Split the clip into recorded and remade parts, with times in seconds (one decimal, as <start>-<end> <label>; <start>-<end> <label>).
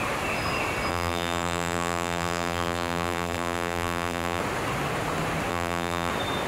0.0-0.9 recorded; 0.9-4.4 remade; 4.4-5.5 recorded; 5.5-6.1 remade; 6.1-6.5 recorded